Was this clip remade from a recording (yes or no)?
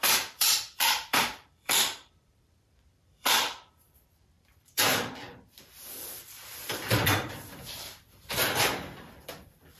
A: yes